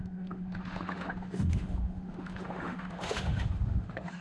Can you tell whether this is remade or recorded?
remade